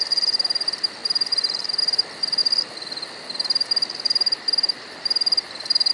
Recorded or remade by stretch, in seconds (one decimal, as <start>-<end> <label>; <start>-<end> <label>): 0.0-2.4 remade; 2.4-5.9 recorded